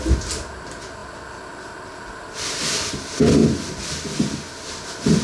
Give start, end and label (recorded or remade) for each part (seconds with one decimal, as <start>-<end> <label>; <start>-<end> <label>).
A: 0.0-5.2 recorded

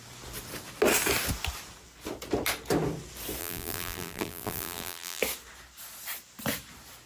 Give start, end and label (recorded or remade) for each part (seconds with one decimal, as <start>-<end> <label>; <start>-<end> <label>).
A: 0.0-3.4 recorded; 3.4-5.2 remade; 5.2-7.1 recorded

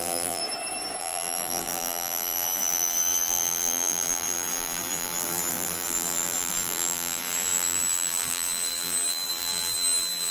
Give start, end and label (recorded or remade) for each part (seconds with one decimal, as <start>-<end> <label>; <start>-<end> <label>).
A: 0.0-0.4 remade; 0.4-1.0 recorded; 1.0-10.3 remade

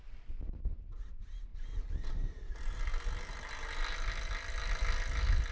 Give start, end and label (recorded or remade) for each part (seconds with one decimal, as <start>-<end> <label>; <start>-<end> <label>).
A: 0.0-1.5 recorded; 1.5-2.8 remade; 2.8-5.5 recorded

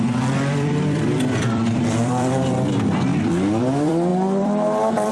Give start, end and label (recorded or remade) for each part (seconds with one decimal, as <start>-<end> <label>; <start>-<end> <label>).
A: 0.0-3.1 remade; 3.1-3.6 recorded; 3.6-5.1 remade